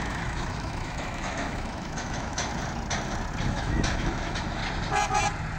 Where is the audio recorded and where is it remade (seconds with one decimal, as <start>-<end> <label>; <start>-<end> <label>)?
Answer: 0.0-2.5 remade; 2.5-3.5 recorded; 3.5-4.6 remade; 4.6-5.6 recorded